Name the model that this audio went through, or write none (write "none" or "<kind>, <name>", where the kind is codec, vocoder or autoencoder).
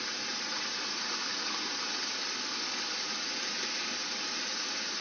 none